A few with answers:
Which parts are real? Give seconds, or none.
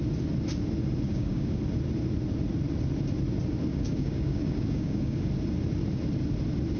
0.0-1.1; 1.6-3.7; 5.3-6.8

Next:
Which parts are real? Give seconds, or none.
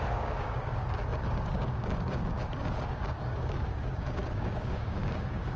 none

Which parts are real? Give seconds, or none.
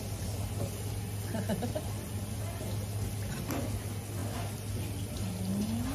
0.0-5.9